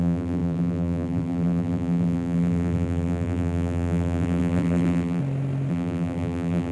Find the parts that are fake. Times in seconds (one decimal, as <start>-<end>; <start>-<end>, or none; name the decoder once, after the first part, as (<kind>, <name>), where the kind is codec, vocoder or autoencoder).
0.0-5.2 (vocoder, BigVGAN v2); 5.7-6.7